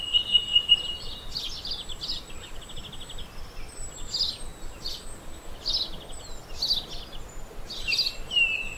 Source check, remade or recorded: recorded